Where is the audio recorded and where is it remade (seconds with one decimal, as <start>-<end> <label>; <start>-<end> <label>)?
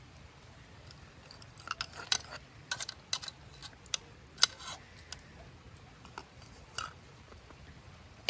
0.0-8.3 recorded